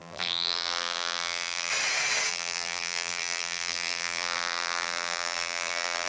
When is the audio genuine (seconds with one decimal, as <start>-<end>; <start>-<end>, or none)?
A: 1.7-2.3